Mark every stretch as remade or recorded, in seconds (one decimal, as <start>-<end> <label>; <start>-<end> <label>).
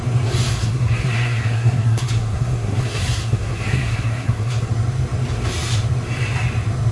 0.0-0.6 recorded; 0.6-4.7 remade; 4.7-6.9 recorded